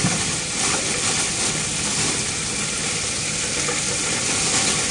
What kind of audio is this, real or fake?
real